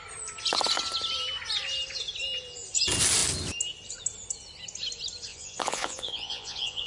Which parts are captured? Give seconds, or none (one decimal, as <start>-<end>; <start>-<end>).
0.0-5.3